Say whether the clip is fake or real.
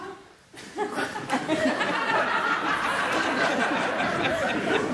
real